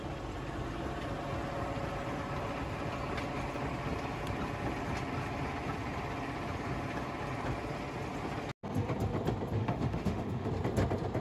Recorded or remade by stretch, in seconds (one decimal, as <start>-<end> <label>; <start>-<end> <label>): 0.0-9.6 recorded; 9.6-10.5 remade; 10.5-11.2 recorded